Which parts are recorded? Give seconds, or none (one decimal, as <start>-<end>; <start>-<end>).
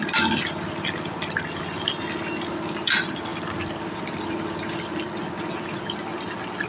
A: 0.0-6.7